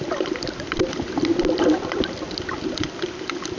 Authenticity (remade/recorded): recorded